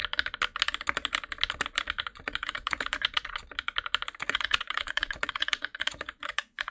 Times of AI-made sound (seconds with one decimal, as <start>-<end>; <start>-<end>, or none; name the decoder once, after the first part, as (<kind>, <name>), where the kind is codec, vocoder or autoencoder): 2.0-3.4 (vocoder, Vocos); 4.2-6.7